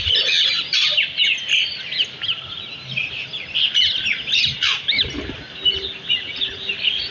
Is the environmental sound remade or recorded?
recorded